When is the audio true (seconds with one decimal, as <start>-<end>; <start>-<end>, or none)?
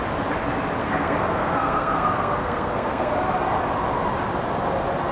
0.0-0.8; 3.1-5.1